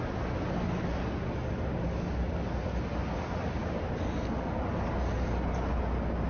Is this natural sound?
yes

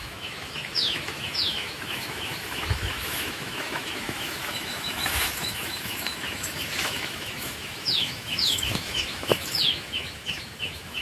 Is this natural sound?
no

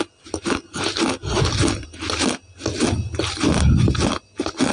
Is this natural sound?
yes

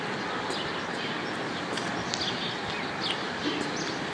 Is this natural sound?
yes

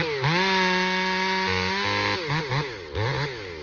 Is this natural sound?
yes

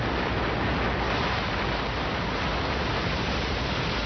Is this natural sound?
yes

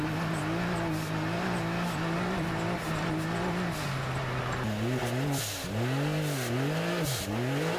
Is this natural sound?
yes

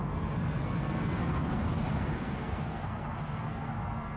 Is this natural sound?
no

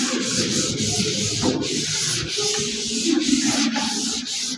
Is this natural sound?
yes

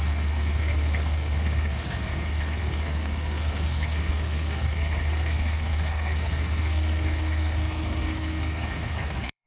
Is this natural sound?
no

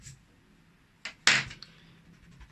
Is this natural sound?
yes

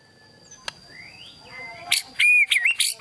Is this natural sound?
yes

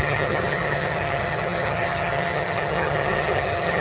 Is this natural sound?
no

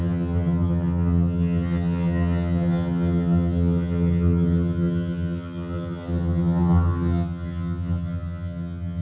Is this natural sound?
no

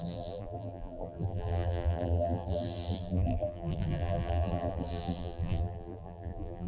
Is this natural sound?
no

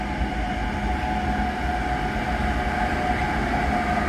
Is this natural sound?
yes